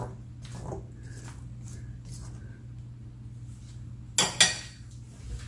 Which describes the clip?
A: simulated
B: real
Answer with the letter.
B